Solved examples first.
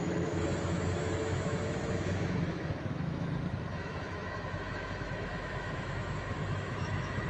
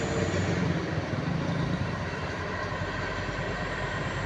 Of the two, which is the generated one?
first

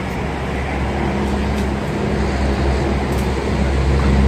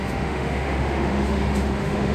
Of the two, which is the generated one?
second